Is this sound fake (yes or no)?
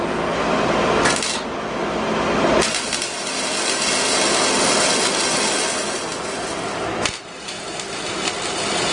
no